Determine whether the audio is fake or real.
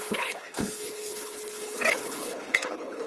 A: fake